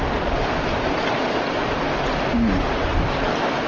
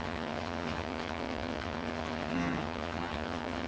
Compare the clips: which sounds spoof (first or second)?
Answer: second